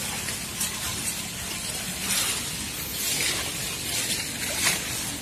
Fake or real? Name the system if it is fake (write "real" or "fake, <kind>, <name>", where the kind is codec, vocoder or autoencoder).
real